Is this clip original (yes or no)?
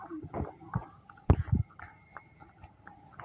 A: no